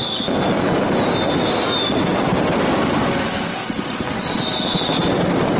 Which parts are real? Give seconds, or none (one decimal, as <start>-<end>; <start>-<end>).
0.0-2.1